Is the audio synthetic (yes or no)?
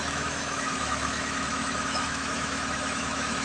yes